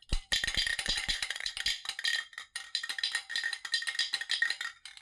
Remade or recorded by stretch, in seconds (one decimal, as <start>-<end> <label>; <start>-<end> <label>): 0.0-0.7 recorded; 0.7-1.5 remade; 1.5-5.0 recorded